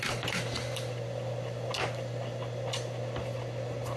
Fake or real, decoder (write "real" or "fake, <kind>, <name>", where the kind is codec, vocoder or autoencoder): real